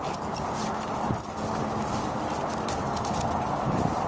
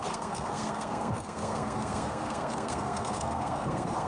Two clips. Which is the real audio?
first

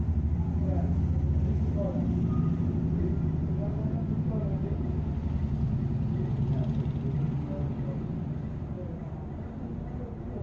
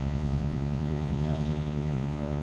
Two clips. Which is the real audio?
first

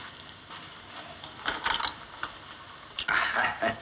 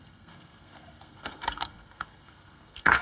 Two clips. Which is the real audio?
first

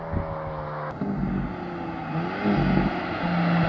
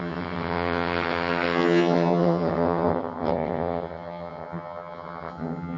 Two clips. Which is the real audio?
first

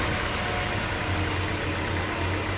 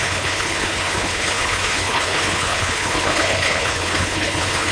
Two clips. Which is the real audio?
first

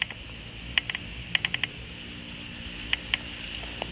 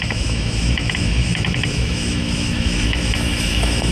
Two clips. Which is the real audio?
first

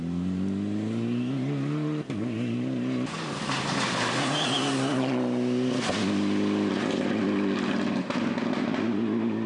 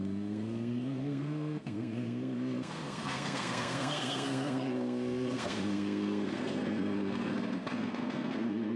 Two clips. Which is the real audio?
first